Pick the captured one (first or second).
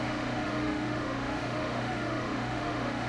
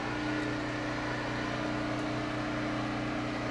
second